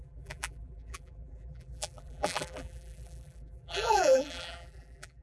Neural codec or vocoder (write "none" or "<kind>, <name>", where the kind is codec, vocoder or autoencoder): vocoder, BigVGAN v2